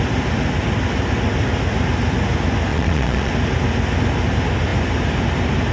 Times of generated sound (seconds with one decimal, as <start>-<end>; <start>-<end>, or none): 2.7-3.3